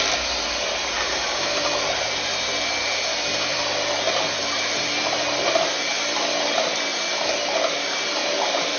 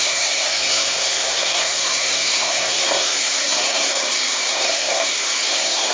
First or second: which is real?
first